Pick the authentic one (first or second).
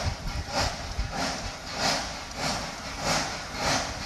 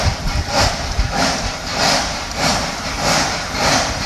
first